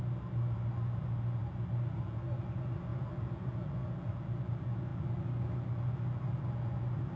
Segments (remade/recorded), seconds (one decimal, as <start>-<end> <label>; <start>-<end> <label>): 0.0-7.2 recorded